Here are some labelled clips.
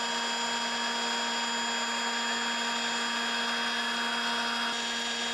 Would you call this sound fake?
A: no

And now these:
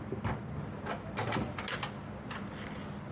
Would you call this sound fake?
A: no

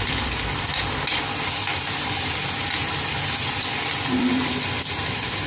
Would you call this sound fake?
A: yes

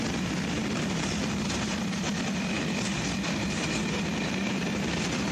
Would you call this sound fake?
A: yes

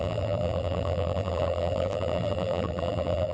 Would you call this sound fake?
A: yes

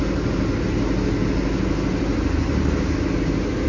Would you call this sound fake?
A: no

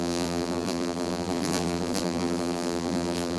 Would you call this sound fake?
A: yes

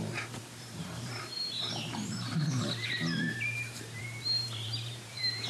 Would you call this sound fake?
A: yes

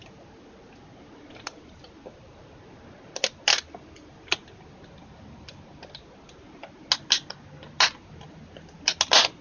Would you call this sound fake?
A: no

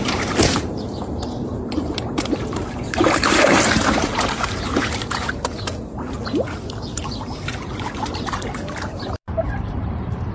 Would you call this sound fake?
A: yes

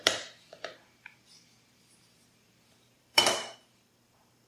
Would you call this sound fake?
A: yes